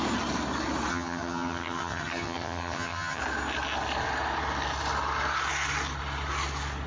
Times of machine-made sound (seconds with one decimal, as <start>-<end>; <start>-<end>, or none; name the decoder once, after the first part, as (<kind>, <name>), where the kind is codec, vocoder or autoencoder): 0.9-3.2 (vocoder, HiFi-GAN)